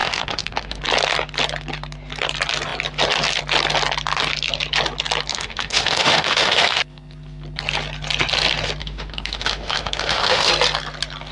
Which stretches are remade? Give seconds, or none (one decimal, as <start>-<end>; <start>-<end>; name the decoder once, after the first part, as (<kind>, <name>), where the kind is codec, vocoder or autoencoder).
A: 0.0-0.8 (autoencoder, DAC-VAE); 5.3-6.8; 8.8-10.5